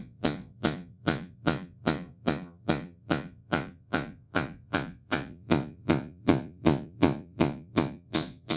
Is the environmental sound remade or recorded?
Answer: remade